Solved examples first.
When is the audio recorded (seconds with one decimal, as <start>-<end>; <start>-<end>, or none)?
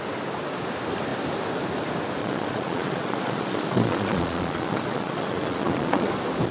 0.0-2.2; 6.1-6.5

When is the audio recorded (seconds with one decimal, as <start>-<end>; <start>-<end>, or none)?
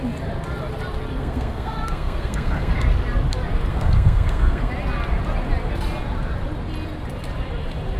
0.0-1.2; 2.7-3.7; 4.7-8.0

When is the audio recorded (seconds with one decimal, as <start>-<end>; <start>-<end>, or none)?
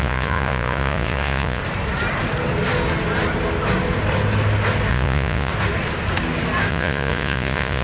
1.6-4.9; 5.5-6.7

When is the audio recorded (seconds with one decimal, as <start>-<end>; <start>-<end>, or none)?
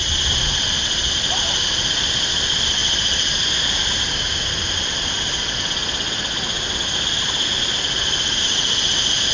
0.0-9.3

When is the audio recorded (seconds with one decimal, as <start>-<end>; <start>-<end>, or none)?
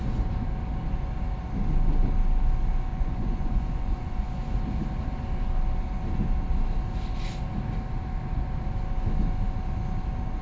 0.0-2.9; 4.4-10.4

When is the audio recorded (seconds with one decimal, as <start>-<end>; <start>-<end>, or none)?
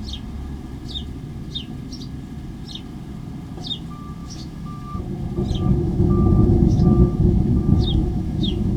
0.0-4.2; 5.0-5.7